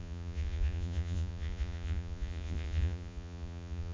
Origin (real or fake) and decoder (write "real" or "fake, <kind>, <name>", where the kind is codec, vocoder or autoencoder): fake, vocoder, Vocos